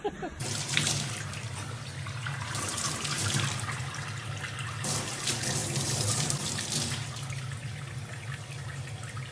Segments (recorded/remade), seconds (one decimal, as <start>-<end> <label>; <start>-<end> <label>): 0.0-9.3 recorded